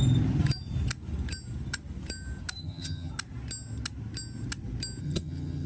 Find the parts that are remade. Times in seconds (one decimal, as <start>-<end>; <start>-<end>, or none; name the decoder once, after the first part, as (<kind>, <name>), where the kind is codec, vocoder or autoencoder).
2.6-3.1 (vocoder, HiFi-GAN); 5.0-5.7